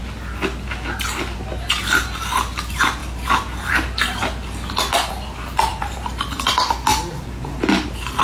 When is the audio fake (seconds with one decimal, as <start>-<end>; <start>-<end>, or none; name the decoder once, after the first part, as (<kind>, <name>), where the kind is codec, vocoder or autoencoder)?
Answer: 5.7-6.5 (vocoder, BigVGAN v2); 6.9-8.2